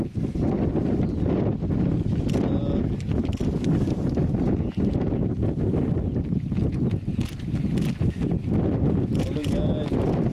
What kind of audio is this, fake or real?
real